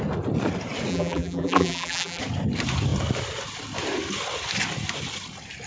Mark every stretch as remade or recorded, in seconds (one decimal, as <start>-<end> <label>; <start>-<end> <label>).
0.0-0.9 recorded; 0.9-2.2 remade; 2.2-5.7 recorded